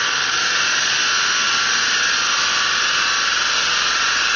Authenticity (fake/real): real